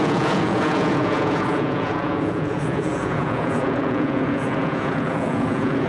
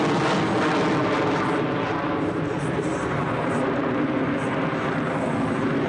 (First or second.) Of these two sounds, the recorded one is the second